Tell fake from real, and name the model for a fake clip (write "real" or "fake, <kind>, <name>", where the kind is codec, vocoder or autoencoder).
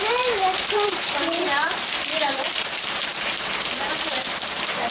fake, vocoder, BigVGAN v2